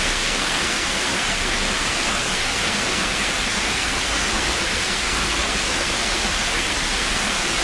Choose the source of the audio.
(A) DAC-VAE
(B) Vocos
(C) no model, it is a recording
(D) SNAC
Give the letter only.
D